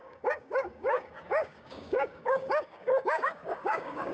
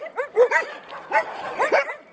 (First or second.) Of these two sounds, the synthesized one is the first